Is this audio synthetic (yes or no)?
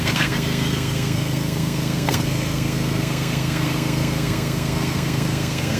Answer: yes